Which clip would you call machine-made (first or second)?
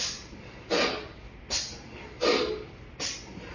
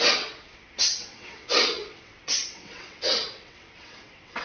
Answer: second